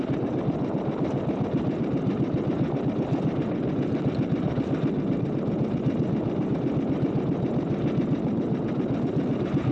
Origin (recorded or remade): recorded